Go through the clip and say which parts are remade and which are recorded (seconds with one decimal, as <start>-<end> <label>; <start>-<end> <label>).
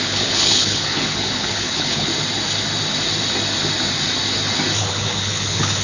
0.0-2.1 remade; 2.1-4.8 recorded; 4.8-5.8 remade